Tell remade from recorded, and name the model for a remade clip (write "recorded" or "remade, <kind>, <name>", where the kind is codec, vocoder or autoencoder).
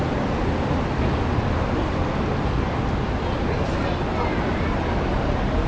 recorded